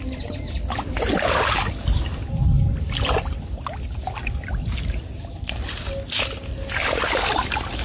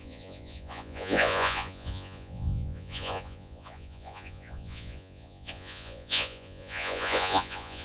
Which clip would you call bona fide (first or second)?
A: first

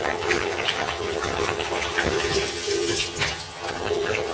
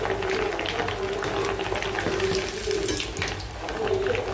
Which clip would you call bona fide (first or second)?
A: second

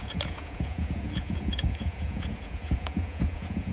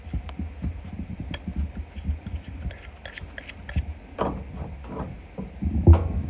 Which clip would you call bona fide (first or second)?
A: second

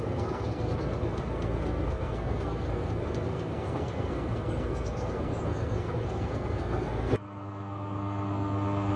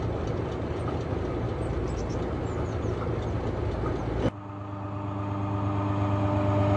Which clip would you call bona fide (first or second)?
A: second